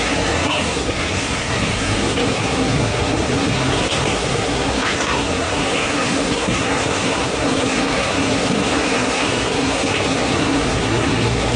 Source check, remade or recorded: remade